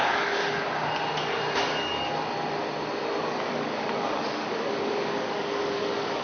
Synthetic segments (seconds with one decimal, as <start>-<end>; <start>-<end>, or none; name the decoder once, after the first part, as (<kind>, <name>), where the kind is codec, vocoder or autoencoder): 0.0-0.4 (codec, DAC); 1.6-2.1; 3.2-6.2

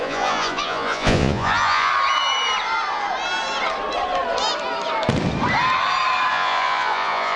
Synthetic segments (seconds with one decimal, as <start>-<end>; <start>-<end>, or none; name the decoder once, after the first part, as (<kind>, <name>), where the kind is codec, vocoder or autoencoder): 0.0-1.9 (vocoder, Vocos); 6.3-7.4

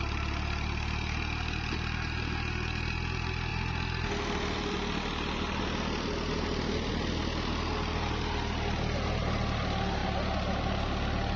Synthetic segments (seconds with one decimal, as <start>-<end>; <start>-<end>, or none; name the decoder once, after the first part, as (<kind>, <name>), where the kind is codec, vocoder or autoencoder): none